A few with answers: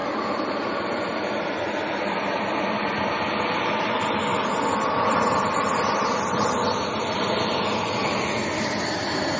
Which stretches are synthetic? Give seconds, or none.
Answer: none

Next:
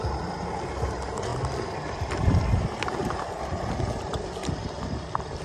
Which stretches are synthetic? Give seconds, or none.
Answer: none